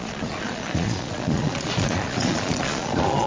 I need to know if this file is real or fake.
fake